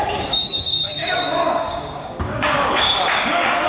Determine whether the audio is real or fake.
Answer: fake